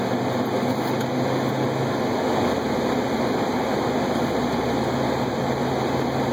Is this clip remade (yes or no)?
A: no